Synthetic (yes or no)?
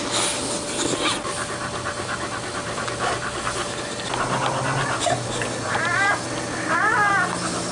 no